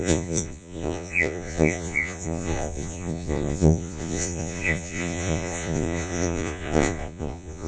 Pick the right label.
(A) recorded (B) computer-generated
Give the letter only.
B